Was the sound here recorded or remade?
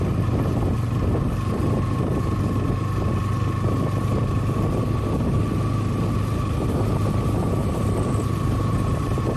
recorded